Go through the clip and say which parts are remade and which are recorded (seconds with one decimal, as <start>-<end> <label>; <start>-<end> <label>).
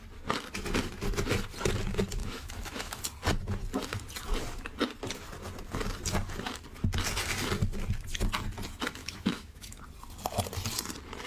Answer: 0.0-2.2 recorded; 2.2-3.0 remade; 3.0-9.0 recorded; 9.0-9.8 remade; 9.8-11.3 recorded